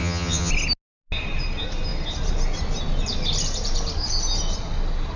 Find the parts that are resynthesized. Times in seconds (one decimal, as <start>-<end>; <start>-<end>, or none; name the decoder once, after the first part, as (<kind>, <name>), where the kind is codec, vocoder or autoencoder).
0.0-0.5 (vocoder, HiFi-GAN)